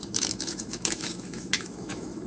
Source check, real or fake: fake